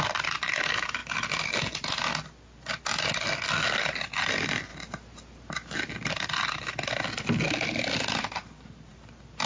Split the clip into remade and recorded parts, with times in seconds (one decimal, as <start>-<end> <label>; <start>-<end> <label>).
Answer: 0.0-9.5 recorded

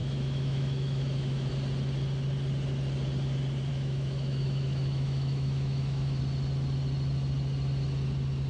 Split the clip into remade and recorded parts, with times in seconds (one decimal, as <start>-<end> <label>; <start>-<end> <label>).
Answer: 0.0-1.5 remade; 1.5-3.7 recorded; 3.7-6.2 remade; 6.2-8.5 recorded

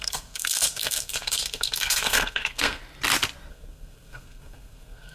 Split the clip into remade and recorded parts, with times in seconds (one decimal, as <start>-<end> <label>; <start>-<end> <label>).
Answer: 0.0-2.8 remade; 2.8-3.5 recorded; 3.5-5.1 remade

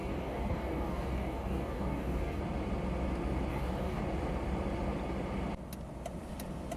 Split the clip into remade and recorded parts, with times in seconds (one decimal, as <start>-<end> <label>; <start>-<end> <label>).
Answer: 0.0-2.4 remade; 2.4-3.5 recorded; 3.5-4.0 remade; 4.0-6.8 recorded